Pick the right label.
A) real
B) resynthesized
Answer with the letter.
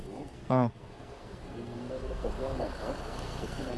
B